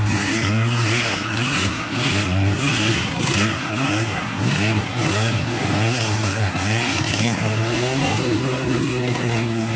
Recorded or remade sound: remade